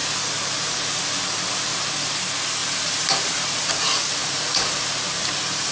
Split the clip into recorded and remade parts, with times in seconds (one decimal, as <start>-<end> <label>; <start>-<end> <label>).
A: 0.0-2.6 recorded; 2.6-3.7 remade; 3.7-4.2 recorded; 4.2-5.7 remade